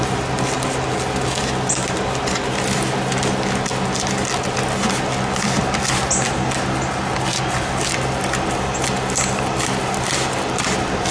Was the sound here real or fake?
real